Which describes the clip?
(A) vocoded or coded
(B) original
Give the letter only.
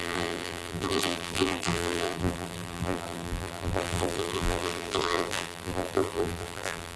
A